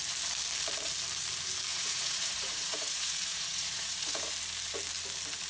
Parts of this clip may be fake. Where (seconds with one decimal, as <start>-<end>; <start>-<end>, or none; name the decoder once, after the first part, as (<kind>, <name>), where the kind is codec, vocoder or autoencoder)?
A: 1.7-4.3 (vocoder, Vocos)